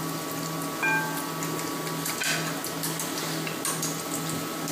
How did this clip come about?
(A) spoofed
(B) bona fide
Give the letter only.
B